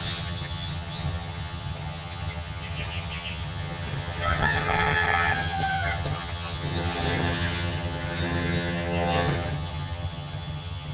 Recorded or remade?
remade